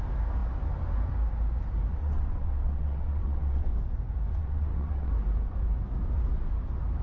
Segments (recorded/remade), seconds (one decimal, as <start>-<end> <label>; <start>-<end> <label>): 0.0-1.9 recorded; 1.9-3.7 remade; 3.7-4.4 recorded; 4.4-5.1 remade; 5.1-7.0 recorded